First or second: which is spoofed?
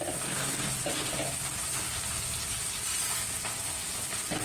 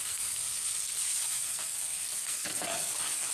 second